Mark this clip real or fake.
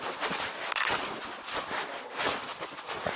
real